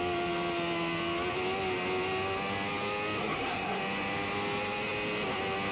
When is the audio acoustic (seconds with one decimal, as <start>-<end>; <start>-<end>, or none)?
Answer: 0.0-3.2; 3.8-5.7